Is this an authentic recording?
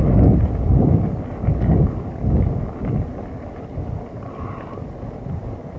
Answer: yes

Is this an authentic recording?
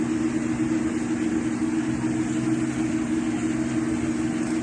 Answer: yes